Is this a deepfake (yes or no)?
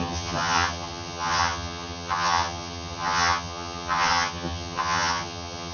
yes